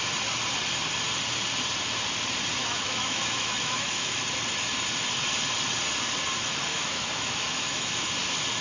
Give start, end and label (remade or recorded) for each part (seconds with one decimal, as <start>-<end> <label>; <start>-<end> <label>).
0.0-2.6 recorded; 2.6-4.2 remade; 4.2-6.7 recorded; 6.7-8.1 remade; 8.1-8.6 recorded